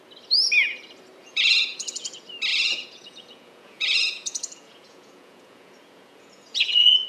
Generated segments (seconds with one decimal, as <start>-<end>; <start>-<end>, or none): 1.2-2.1; 2.5-7.1